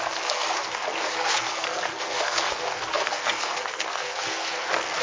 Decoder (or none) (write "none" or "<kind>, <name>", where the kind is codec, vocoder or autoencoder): codec, SNAC